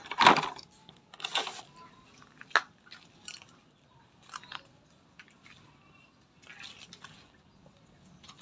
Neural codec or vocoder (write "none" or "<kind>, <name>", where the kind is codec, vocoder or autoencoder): none